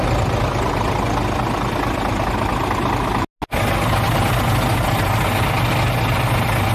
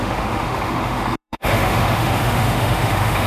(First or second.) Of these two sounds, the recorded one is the first